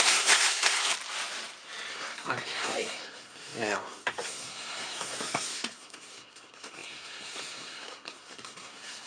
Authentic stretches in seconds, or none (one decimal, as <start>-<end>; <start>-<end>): 0.9-1.9

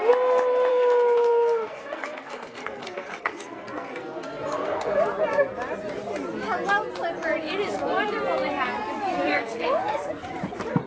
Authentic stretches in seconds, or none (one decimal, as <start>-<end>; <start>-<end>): 0.0-0.7; 5.0-9.3; 9.9-10.9

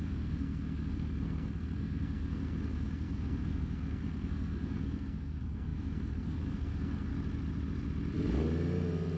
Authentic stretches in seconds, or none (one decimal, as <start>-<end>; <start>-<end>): 7.1-9.2

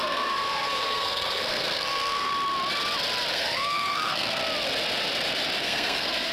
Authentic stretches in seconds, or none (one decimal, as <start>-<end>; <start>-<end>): 2.3-3.3; 4.4-5.6

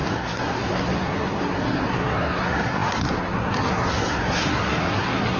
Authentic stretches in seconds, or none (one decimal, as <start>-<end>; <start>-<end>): none

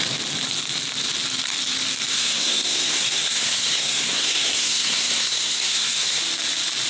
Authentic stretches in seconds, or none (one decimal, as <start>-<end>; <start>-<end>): 0.0-2.1; 6.2-6.9

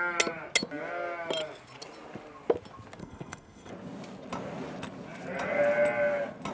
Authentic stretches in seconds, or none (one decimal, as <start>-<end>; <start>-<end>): 0.0-3.0; 3.7-6.5

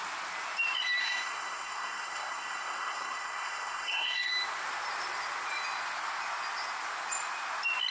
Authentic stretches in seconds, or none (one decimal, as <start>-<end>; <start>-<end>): 0.0-1.0; 4.3-7.9